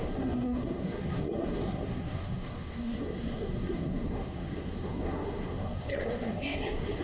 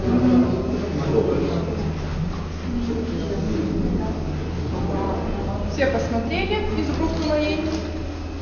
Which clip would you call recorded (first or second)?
second